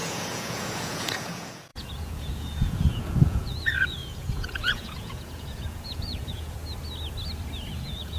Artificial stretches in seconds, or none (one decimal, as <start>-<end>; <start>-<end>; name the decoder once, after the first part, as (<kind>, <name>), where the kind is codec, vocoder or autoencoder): 0.0-6.6 (vocoder, Vocos); 7.7-8.2